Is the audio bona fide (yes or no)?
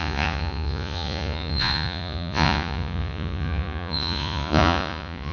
no